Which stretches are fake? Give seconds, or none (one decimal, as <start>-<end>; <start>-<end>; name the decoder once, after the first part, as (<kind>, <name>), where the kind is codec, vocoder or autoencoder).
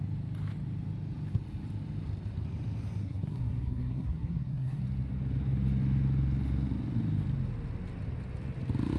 3.0-4.8 (codec, SNAC)